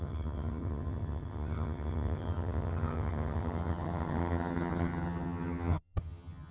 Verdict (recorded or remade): remade